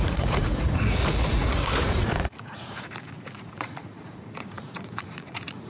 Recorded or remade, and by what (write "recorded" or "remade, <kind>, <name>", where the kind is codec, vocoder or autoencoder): remade, vocoder, Vocos